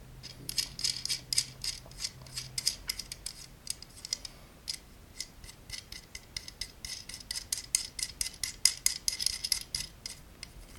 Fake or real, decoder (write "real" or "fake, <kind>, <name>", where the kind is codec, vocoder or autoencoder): real